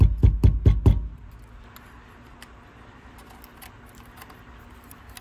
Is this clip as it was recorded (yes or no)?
yes